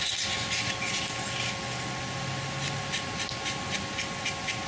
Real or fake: real